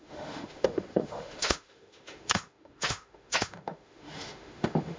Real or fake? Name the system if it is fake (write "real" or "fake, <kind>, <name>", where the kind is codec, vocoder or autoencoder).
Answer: fake, autoencoder, DAC-VAE